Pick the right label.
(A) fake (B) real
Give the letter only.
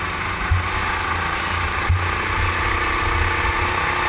B